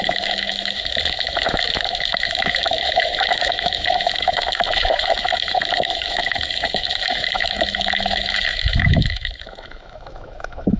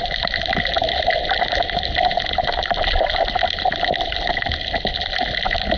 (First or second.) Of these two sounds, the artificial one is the first